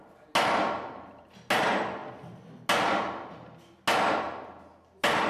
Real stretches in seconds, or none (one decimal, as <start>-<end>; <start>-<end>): 0.0-5.3